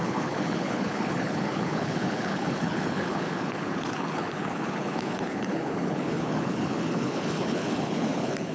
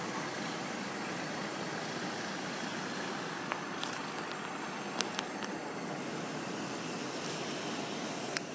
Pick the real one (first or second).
second